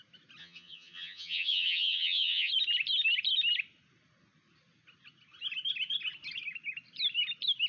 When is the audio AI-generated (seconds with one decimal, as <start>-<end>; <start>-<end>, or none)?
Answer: 0.4-2.5